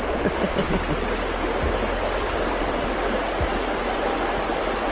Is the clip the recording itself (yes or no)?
yes